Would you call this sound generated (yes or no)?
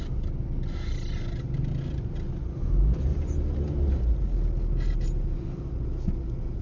no